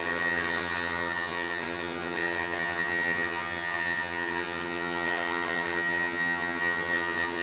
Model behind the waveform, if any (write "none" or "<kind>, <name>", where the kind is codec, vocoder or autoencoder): vocoder, HiFi-GAN